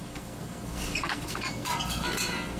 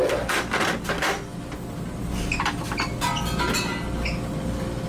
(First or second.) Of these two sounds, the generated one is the first